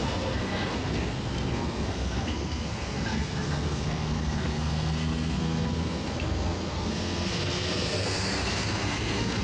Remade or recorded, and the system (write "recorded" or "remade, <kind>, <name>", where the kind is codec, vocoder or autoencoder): remade, codec, SNAC